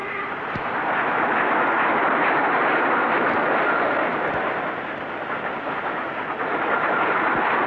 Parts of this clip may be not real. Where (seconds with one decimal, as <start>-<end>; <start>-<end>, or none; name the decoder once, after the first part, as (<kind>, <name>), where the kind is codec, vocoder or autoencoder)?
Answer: none